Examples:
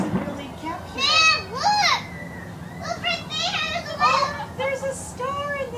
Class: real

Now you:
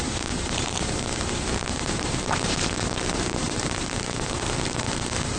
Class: fake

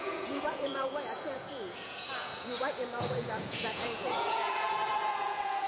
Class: fake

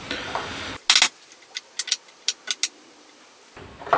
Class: real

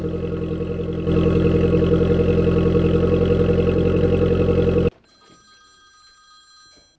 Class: real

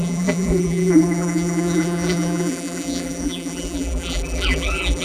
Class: fake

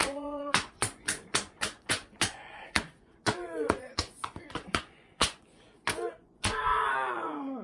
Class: fake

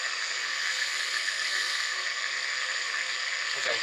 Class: fake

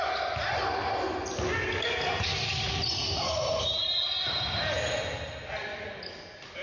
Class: real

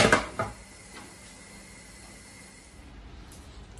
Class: real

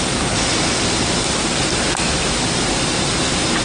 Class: real